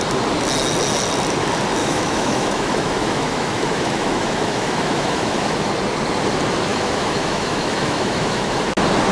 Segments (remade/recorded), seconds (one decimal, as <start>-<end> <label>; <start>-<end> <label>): 0.0-1.8 recorded; 1.8-5.7 remade; 5.7-6.7 recorded; 6.7-8.6 remade; 8.6-9.1 recorded